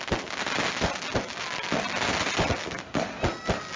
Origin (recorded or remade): recorded